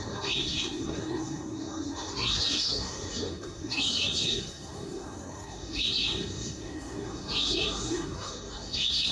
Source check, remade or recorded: remade